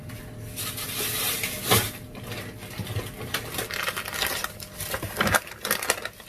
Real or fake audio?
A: real